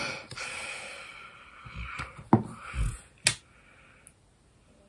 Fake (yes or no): no